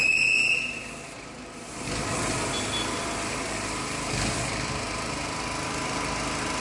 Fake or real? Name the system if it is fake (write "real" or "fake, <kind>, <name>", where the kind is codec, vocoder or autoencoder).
real